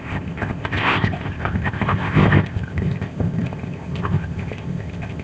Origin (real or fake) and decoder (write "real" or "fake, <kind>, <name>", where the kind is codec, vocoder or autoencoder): fake, codec, ZipCodec